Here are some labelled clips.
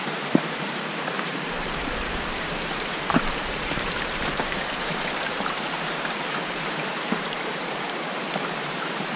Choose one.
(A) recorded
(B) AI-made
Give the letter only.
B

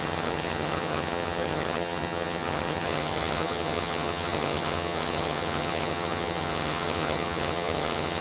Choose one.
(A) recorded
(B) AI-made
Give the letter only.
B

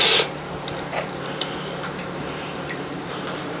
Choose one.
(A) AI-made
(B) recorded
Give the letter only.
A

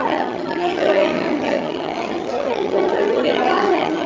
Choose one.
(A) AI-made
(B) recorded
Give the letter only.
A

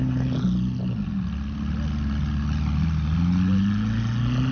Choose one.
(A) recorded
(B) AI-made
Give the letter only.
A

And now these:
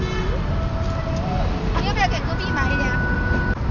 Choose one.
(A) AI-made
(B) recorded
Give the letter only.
B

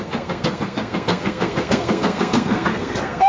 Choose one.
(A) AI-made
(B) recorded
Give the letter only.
A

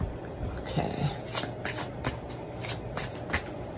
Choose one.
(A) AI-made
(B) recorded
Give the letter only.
B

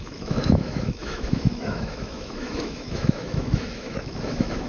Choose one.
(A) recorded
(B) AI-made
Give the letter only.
B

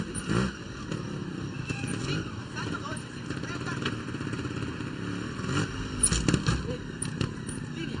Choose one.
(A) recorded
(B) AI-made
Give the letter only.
A